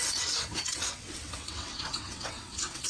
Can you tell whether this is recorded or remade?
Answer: remade